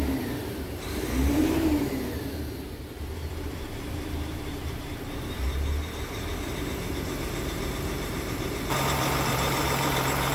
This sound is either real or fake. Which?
fake